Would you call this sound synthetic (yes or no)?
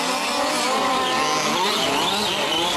no